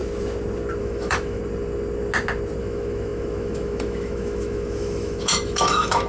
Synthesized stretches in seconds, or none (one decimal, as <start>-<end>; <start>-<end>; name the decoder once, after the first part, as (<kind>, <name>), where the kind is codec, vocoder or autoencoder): 0.8-1.4 (autoencoder, DAC-VAE); 2.6-6.1